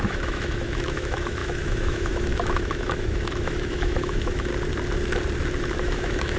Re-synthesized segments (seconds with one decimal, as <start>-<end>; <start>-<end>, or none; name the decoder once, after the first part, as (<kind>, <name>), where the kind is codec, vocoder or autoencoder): 0.0-4.5 (autoencoder, DAC-VAE); 5.8-6.4